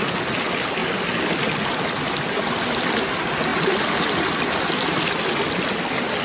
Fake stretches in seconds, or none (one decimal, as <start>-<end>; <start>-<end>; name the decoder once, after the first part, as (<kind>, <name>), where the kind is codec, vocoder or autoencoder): none